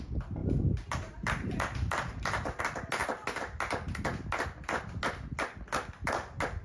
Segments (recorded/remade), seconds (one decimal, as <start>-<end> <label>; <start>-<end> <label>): 0.0-0.4 recorded; 0.4-2.6 remade; 2.6-6.6 recorded